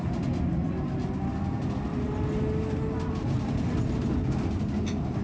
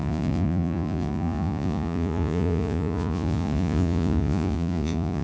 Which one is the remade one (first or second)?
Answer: second